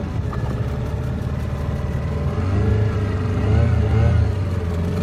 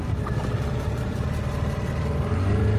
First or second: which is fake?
second